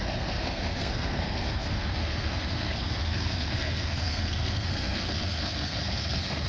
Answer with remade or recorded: remade